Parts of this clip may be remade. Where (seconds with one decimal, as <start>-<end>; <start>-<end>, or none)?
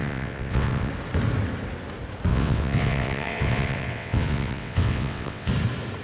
0.0-0.9; 2.3-5.5